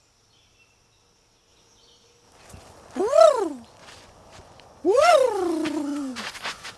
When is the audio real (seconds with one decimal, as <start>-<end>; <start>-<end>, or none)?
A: 0.0-3.8; 5.1-5.9